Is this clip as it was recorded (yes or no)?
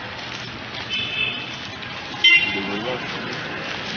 yes